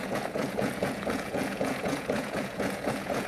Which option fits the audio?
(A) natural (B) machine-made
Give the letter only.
B